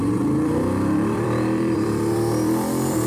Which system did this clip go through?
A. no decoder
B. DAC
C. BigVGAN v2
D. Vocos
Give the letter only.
C